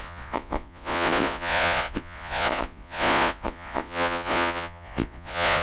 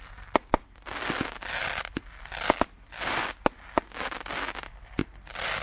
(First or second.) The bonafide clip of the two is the second